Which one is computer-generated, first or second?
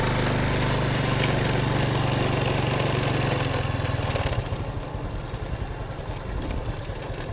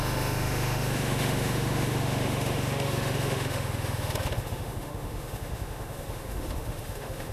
second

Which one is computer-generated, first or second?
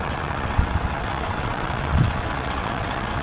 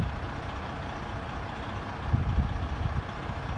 first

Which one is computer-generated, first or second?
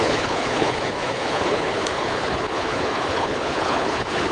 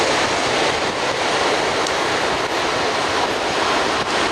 first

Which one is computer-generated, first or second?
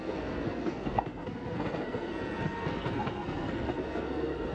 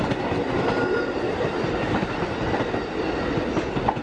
first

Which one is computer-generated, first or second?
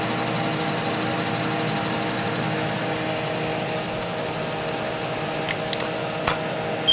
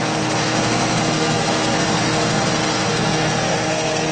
second